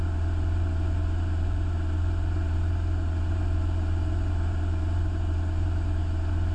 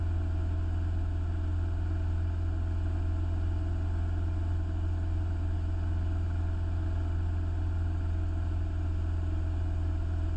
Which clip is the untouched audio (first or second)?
second